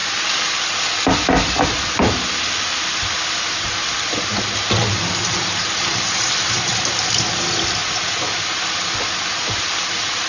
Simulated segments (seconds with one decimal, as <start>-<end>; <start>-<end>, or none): 4.8-6.8